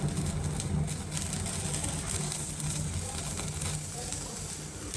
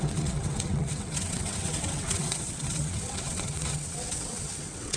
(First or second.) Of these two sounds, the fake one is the second